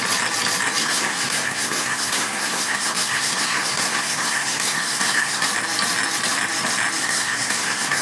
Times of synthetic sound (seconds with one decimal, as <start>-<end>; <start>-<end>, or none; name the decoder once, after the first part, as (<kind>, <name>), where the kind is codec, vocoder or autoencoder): 0.8-5.5 (codec, SNAC); 7.0-8.0